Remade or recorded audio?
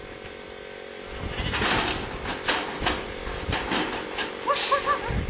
recorded